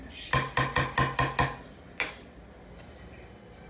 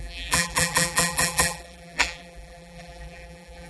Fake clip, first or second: second